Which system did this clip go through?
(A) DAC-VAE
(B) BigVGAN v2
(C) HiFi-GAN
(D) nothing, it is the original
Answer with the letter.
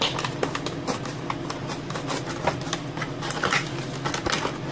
D